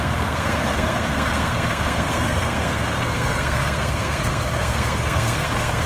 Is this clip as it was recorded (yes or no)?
no